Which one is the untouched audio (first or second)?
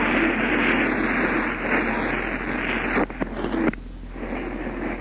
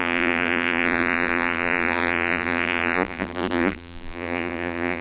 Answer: first